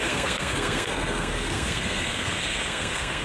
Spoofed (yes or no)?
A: yes